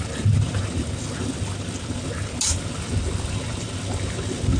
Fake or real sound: real